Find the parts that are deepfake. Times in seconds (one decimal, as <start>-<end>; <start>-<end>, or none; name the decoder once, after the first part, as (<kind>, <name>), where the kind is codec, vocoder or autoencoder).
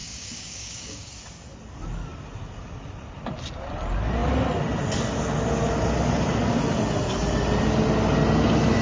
0.0-1.1 (codec, DAC)